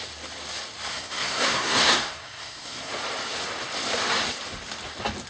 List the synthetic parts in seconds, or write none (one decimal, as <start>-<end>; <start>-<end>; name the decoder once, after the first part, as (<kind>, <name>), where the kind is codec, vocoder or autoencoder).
0.9-2.9 (codec, SNAC)